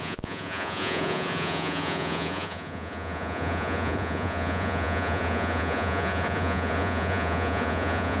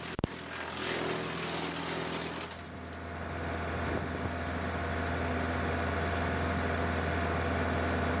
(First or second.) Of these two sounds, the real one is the second